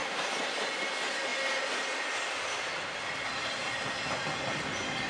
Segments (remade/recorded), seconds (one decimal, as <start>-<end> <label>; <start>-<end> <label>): 0.0-0.7 remade; 0.7-5.1 recorded